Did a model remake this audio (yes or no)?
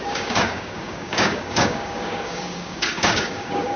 yes